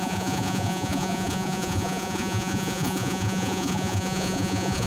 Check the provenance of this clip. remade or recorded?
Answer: remade